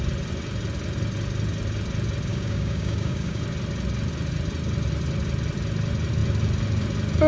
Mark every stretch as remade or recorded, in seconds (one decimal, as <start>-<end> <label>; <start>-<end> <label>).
0.0-2.3 recorded; 2.3-3.4 remade; 3.4-7.3 recorded